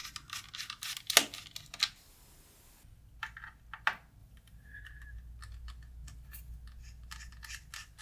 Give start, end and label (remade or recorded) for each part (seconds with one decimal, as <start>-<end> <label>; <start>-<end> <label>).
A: 0.0-4.2 recorded; 4.2-4.8 remade; 4.8-8.0 recorded